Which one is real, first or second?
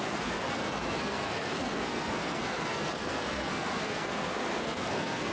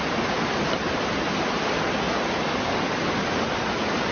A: second